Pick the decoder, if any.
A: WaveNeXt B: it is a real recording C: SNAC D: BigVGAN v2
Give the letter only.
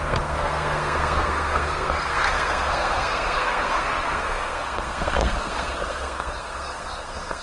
C